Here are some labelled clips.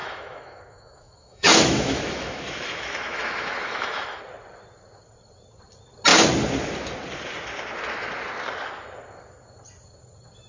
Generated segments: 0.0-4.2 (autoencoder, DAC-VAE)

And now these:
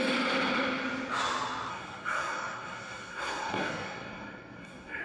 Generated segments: 1.7-5.0 (codec, SNAC)

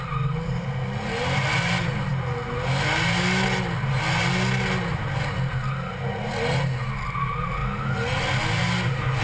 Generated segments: none

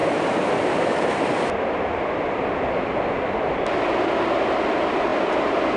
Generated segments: none